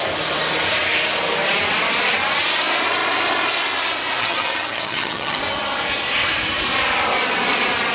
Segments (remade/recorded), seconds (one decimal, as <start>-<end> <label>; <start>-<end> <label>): 0.0-4.2 recorded; 4.2-5.4 remade; 5.4-7.9 recorded